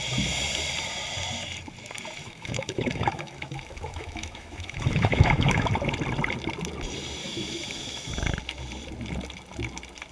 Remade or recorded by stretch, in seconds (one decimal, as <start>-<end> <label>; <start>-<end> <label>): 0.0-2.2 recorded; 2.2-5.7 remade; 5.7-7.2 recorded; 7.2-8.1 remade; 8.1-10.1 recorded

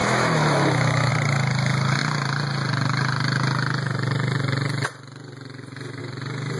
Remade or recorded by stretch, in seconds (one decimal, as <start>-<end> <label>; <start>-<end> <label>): 0.0-1.1 remade; 1.1-6.6 recorded

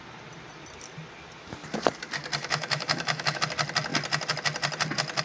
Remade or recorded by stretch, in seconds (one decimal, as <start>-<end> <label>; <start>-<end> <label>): 0.0-2.4 recorded; 2.4-3.4 remade; 3.4-5.2 recorded